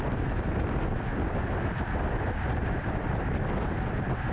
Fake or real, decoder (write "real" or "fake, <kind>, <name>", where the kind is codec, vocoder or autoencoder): real